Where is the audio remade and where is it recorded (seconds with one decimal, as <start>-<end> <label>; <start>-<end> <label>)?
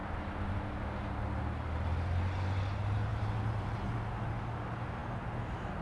0.0-3.1 recorded; 3.1-4.0 remade; 4.0-5.8 recorded